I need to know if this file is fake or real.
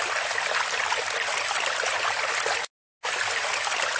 real